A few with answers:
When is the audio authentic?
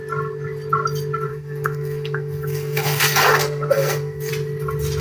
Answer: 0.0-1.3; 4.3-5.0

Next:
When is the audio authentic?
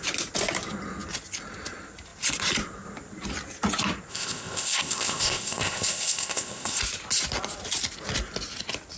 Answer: 0.0-4.1; 6.8-9.0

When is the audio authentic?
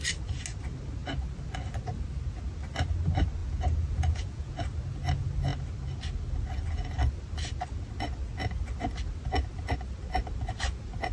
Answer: 0.0-3.4; 4.5-11.1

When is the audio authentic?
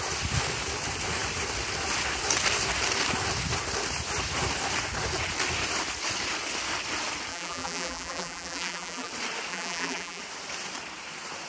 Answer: 0.0-7.3; 9.1-9.5; 10.2-11.5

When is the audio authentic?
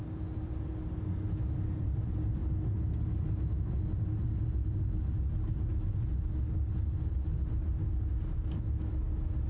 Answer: 0.7-1.8; 2.4-7.1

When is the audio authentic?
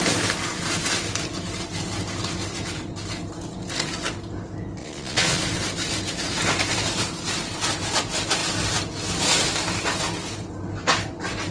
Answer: 0.0-4.8; 5.4-11.5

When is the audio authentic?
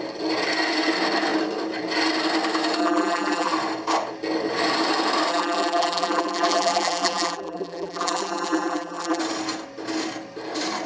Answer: 0.0-2.8; 3.5-5.3; 9.2-10.9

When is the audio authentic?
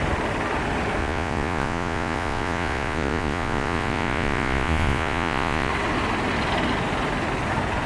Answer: 0.0-1.0; 5.7-7.9